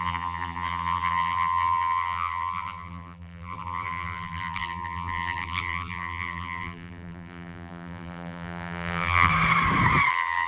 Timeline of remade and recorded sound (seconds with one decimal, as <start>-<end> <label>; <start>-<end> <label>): 0.0-9.3 remade; 9.3-10.1 recorded; 10.1-10.5 remade